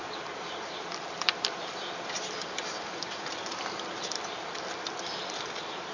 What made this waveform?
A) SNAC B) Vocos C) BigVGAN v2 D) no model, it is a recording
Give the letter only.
C